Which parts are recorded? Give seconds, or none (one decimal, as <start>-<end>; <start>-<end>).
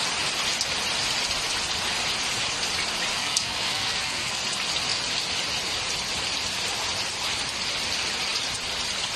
0.0-3.1; 4.4-9.2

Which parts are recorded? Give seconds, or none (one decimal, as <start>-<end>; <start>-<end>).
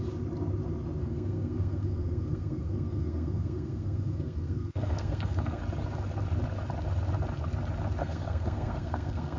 0.0-1.0; 5.6-8.0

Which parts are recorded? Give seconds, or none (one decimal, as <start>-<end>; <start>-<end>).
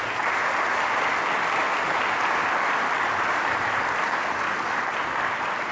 0.0-5.7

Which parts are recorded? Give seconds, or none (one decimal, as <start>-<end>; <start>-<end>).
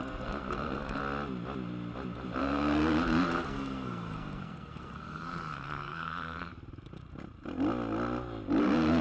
1.0-2.4; 6.5-8.6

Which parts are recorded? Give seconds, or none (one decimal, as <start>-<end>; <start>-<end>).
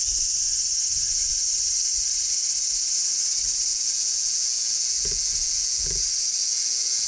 0.0-3.7; 6.0-6.4